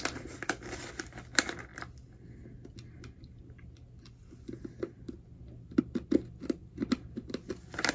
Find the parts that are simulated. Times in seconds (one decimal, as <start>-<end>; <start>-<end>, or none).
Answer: none